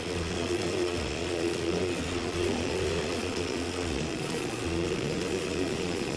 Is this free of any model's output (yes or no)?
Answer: no